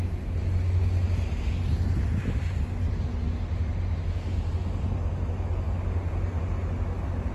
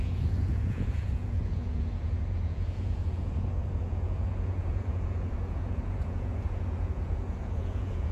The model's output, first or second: second